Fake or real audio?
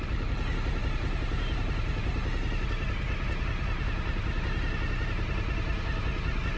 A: real